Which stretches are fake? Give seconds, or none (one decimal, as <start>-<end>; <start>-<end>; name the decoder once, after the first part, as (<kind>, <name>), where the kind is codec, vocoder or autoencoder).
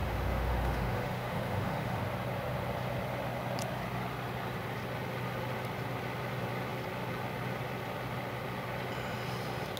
0.0-2.0 (autoencoder, DAC-VAE)